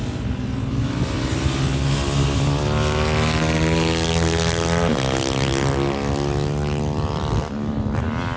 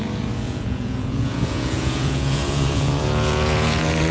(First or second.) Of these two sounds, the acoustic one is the first